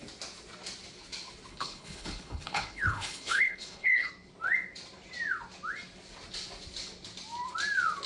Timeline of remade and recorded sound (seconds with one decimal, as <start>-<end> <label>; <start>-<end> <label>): 0.0-1.5 recorded; 1.5-4.1 remade; 4.1-8.1 recorded